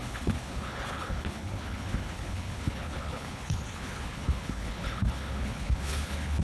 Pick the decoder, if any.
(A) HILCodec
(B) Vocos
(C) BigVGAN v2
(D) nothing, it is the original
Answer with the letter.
A